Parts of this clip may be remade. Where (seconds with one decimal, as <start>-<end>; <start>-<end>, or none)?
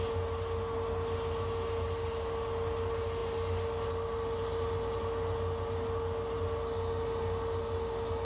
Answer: none